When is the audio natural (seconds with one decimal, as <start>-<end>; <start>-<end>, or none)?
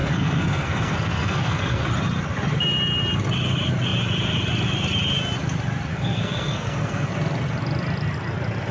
1.8-5.9; 7.1-8.7